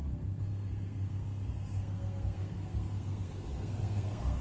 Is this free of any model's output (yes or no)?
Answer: no